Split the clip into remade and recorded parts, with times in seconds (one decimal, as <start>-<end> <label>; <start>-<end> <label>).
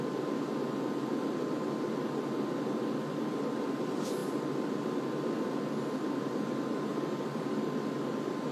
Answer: 0.0-4.2 recorded; 4.2-5.6 remade; 5.6-6.9 recorded; 6.9-7.5 remade; 7.5-8.5 recorded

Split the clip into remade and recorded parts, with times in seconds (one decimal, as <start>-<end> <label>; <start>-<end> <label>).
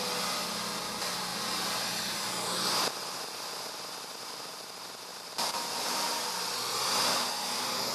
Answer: 0.0-5.1 recorded; 5.1-6.1 remade; 6.1-7.9 recorded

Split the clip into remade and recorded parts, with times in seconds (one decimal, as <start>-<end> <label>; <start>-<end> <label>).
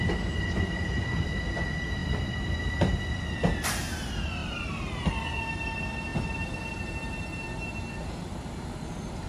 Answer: 0.0-6.1 recorded; 6.1-6.8 remade; 6.8-9.3 recorded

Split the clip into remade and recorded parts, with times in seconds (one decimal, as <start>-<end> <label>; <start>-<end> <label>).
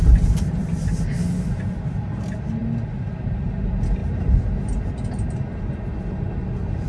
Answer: 0.0-6.9 recorded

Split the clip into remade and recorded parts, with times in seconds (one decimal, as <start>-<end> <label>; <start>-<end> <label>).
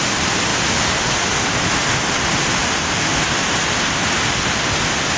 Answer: 0.0-0.5 recorded; 0.5-1.1 remade; 1.1-5.2 recorded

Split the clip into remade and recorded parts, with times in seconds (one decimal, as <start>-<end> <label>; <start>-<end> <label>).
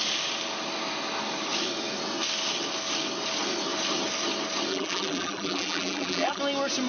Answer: 0.0-4.7 recorded; 4.7-6.4 remade; 6.4-6.9 recorded